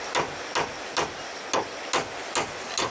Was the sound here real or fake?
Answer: real